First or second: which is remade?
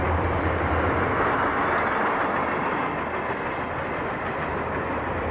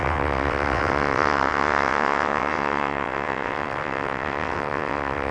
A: second